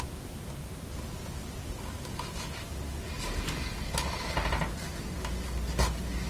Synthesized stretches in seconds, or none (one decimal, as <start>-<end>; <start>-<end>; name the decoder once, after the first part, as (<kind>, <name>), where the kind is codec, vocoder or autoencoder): none